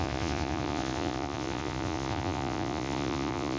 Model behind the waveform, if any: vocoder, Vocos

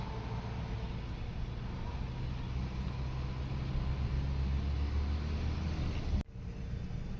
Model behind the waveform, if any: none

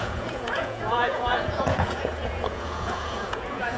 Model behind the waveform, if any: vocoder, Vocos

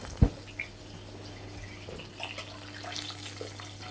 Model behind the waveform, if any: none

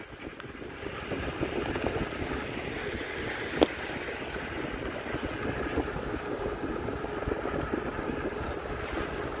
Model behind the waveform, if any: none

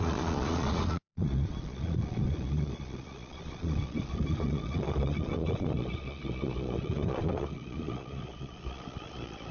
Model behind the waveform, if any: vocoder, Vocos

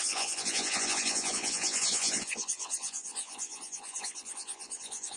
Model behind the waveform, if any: vocoder, Vocos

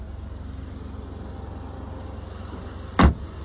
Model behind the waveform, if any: none